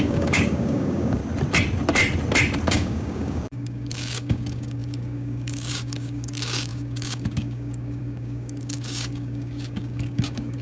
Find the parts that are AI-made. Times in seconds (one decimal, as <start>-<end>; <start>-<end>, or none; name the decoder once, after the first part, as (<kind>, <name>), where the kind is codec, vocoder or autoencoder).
0.0-1.2 (codec, DAC); 2.7-10.6